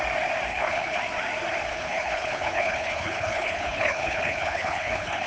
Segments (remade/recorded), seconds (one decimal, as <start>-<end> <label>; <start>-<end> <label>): 0.0-0.5 recorded; 0.5-1.0 remade; 1.0-1.7 recorded; 1.7-5.3 remade